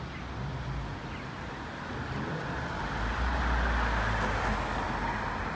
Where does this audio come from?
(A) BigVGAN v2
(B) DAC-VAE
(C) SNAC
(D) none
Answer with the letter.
D